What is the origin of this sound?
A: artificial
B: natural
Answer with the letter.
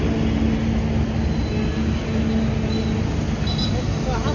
B